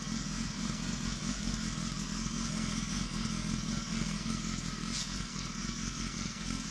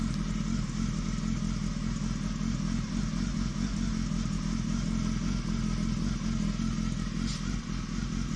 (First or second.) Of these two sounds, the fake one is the first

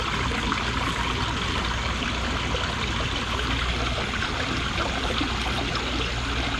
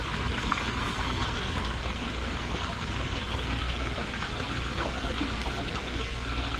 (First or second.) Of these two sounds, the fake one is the second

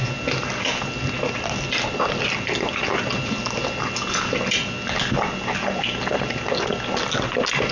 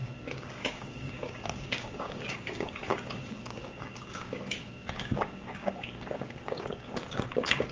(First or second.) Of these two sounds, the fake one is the second